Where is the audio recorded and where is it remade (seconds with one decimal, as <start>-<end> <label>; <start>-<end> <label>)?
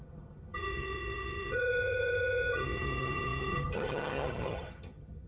0.0-5.3 remade